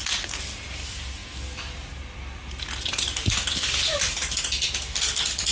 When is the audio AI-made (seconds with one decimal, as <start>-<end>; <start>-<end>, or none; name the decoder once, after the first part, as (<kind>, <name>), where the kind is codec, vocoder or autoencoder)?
none